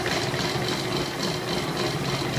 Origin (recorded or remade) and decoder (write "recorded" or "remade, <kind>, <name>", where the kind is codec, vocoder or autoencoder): recorded